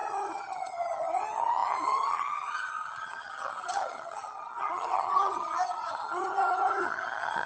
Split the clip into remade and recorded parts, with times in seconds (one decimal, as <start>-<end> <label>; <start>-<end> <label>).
0.0-7.5 remade

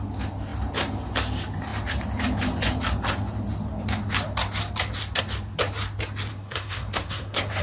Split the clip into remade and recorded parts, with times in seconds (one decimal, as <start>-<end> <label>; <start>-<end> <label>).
0.0-6.3 recorded; 6.3-7.6 remade

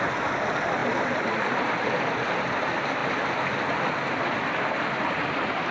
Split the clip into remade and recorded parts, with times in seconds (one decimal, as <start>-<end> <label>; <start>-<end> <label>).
0.0-5.7 recorded

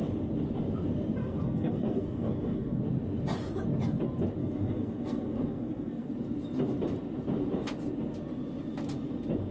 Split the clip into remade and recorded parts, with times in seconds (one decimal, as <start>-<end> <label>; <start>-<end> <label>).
0.0-1.2 recorded; 1.2-2.8 remade; 2.8-4.4 recorded; 4.4-6.1 remade; 6.1-9.5 recorded

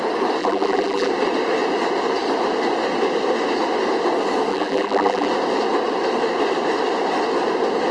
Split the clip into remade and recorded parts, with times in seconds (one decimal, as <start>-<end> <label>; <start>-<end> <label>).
0.0-0.4 recorded; 0.4-1.1 remade; 1.1-4.5 recorded; 4.5-5.3 remade; 5.3-7.9 recorded

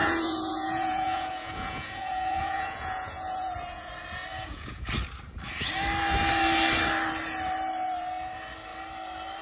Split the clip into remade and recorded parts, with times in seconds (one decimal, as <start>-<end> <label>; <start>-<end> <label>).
0.0-3.9 remade; 3.9-4.3 recorded; 4.3-4.9 remade; 4.9-9.4 recorded

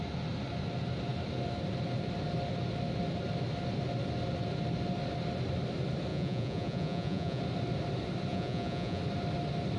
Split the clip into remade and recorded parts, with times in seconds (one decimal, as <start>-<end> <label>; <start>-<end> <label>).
0.0-6.1 recorded; 6.1-7.4 remade; 7.4-8.3 recorded; 8.3-9.0 remade; 9.0-9.8 recorded